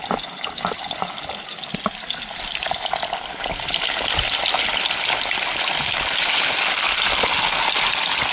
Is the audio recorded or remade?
recorded